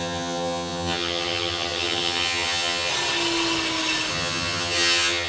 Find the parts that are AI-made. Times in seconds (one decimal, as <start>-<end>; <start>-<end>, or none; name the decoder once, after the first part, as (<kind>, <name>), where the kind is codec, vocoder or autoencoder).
0.0-2.9 (vocoder, HiFi-GAN); 4.1-5.3